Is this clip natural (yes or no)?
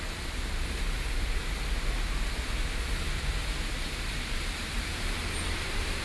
no